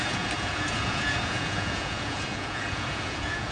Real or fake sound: fake